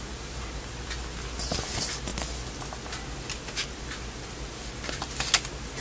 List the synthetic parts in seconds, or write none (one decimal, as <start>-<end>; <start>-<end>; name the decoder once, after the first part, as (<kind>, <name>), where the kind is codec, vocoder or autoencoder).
none